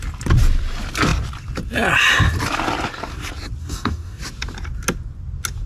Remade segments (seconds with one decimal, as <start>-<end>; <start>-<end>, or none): 3.6-4.2